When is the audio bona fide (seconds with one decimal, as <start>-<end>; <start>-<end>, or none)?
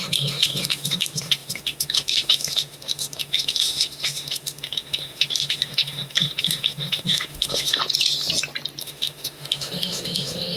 7.8-8.8